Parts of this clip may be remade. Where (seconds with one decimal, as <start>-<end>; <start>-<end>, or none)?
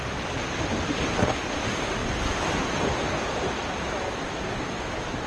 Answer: none